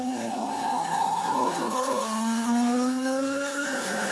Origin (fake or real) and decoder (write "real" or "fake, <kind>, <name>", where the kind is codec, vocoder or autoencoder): fake, codec, SNAC